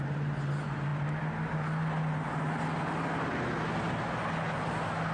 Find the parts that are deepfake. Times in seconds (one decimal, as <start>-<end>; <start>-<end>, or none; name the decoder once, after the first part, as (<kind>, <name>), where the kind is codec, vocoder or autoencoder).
none